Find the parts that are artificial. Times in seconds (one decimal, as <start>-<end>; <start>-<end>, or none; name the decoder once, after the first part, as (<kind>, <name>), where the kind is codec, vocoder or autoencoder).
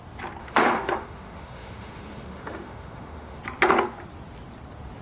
0.4-3.4 (autoencoder, DAC-VAE)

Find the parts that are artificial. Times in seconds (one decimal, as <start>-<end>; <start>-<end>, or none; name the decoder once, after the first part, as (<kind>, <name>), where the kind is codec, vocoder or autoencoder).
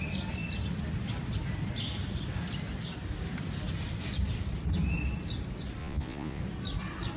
5.8-6.4 (vocoder, Vocos)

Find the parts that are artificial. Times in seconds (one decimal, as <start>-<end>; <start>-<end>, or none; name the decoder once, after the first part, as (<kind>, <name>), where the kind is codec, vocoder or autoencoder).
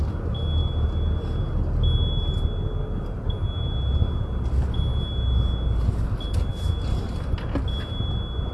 none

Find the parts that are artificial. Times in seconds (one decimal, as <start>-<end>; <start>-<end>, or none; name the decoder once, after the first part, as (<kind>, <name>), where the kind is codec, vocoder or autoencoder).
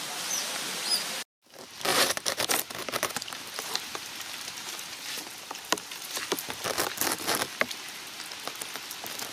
1.9-2.4 (vocoder, BigVGAN v2); 2.8-4.2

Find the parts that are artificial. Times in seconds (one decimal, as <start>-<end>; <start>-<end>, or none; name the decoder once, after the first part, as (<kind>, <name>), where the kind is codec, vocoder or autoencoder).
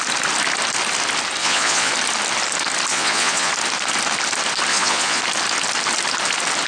1.4-1.9 (vocoder, Vocos); 2.9-3.5; 4.7-5.2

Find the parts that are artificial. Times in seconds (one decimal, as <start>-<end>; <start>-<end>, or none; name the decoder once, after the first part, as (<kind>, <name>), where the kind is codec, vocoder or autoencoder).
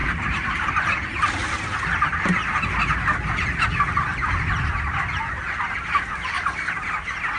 0.0-0.7 (vocoder, BigVGAN v2)